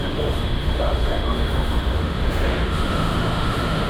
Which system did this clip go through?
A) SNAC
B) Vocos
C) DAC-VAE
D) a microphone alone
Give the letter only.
C